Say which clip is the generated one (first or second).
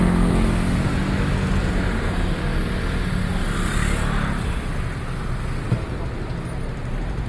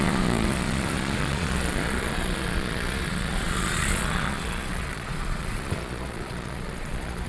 second